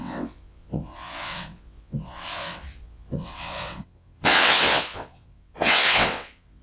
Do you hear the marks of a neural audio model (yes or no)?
yes